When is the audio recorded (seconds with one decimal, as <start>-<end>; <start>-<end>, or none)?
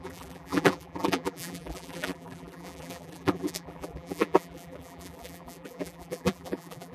none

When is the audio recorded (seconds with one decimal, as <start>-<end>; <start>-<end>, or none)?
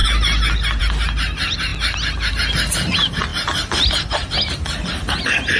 0.0-5.6